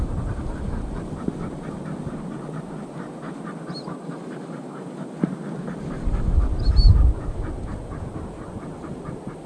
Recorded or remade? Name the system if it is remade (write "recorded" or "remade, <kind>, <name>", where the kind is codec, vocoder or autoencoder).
recorded